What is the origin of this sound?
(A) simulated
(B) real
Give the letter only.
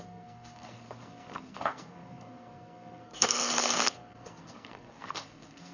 A